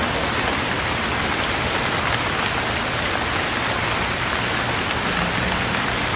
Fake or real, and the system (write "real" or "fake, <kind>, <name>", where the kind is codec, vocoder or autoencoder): real